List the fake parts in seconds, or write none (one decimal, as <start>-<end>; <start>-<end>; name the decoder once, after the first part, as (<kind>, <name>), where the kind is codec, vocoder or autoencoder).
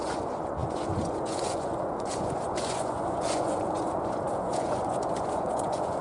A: 0.0-6.0 (vocoder, Vocos)